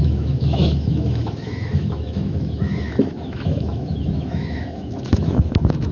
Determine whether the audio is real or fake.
fake